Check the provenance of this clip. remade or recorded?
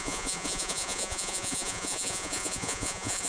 remade